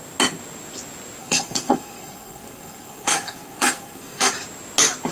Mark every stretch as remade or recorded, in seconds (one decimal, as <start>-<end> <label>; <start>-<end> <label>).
0.0-1.2 recorded; 1.2-4.3 remade; 4.3-5.1 recorded